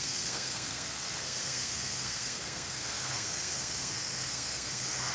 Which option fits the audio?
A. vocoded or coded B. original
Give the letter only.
A